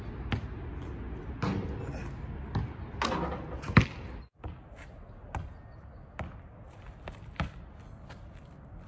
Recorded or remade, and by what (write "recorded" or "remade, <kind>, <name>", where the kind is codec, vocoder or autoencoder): recorded